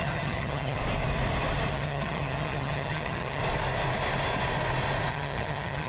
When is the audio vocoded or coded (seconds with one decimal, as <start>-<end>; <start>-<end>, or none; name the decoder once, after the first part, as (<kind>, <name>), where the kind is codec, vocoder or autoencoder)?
0.0-0.8 (vocoder, HiFi-GAN); 1.7-3.4; 5.1-5.9